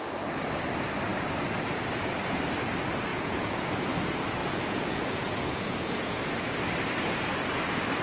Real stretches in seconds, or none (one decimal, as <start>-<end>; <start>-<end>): 0.0-3.1; 3.9-4.4; 6.2-8.0